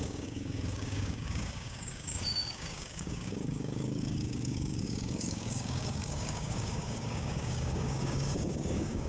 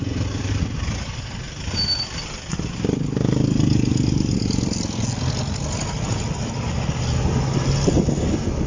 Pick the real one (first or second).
second